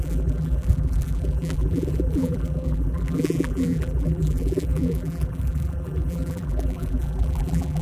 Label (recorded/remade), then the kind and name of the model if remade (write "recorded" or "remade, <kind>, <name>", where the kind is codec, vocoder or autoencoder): remade, vocoder, BigVGAN v2